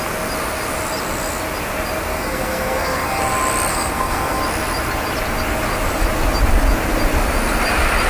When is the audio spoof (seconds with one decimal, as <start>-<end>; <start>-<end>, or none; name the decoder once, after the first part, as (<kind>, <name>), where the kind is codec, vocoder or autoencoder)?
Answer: 2.1-3.2 (codec, SNAC); 3.7-4.4